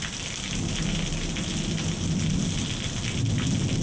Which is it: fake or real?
real